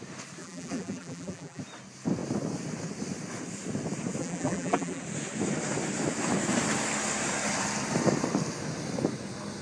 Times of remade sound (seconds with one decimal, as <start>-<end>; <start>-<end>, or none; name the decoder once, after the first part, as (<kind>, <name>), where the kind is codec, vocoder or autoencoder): 0.4-1.6 (vocoder, BigVGAN v2); 4.2-5.0